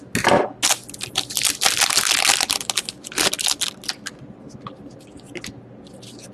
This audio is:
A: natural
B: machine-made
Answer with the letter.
A